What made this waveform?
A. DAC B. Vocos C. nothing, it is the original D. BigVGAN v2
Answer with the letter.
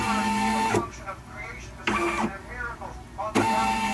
C